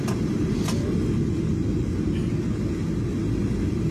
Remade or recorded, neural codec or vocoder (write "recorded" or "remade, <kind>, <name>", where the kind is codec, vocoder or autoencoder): recorded